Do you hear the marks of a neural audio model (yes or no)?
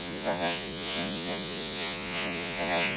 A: yes